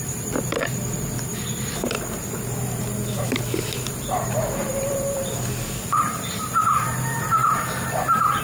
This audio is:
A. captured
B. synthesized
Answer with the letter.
B